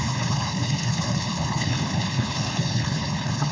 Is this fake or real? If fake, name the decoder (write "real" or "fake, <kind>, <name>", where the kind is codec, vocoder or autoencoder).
fake, codec, HILCodec